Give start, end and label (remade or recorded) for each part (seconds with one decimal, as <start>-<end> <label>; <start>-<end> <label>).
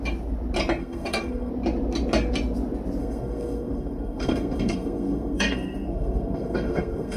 0.0-0.8 recorded; 0.8-1.5 remade; 1.5-3.0 recorded; 3.0-7.2 remade